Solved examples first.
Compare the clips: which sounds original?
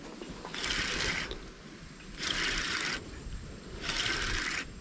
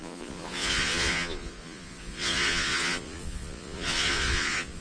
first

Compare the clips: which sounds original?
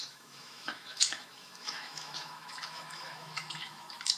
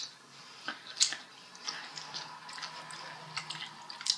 second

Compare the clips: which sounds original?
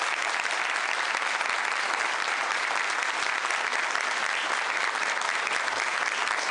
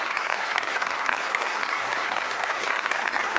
first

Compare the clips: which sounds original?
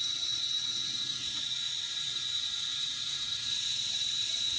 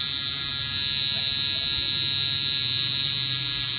second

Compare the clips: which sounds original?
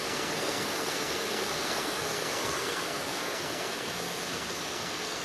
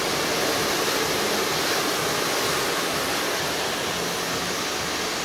second